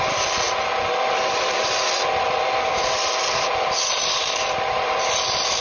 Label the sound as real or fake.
real